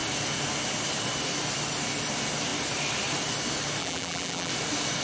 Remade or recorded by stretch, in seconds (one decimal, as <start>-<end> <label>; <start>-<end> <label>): 0.0-3.8 recorded; 3.8-4.5 remade; 4.5-5.0 recorded